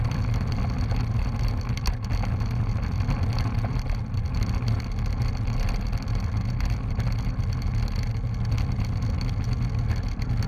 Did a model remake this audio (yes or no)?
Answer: no